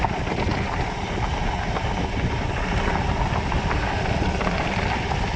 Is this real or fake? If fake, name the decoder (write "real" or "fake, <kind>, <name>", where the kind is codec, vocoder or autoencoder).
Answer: real